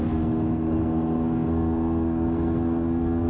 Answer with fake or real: fake